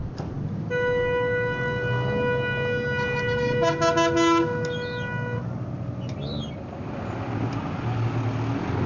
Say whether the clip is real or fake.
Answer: real